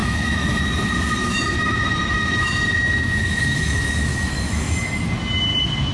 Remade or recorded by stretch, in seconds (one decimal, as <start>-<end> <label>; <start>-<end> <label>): 0.0-0.6 remade; 0.6-1.2 recorded; 1.2-4.7 remade; 4.7-5.9 recorded